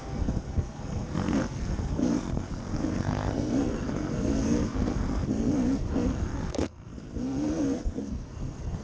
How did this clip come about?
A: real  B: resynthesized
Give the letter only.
B